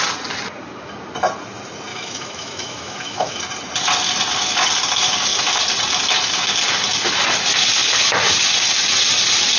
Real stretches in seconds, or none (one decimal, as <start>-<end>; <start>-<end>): 0.0-1.9; 3.4-9.6